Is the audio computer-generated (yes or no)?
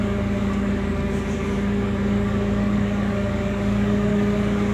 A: yes